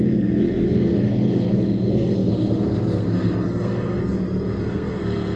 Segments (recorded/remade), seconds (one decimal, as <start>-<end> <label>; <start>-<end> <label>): 0.0-4.0 remade; 4.0-4.6 recorded; 4.6-5.4 remade